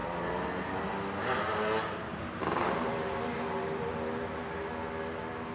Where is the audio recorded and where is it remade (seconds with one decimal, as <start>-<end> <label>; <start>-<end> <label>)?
0.0-0.9 remade; 0.9-2.1 recorded; 2.1-4.7 remade; 4.7-5.5 recorded